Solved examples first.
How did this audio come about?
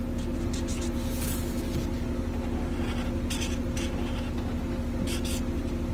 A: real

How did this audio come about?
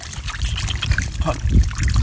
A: real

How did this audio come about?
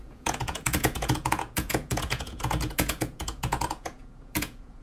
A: fake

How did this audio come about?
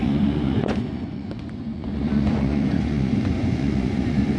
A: fake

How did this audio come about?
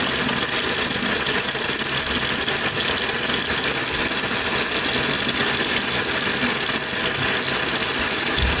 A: real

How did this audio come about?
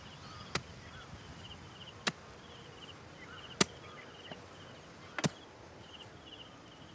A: real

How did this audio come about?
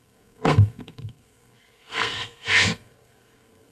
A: fake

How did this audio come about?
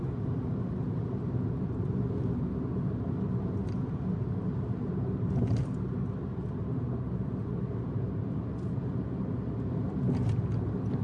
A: real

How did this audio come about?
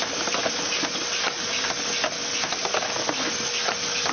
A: real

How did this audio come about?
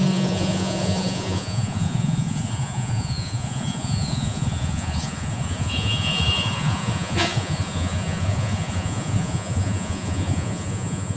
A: fake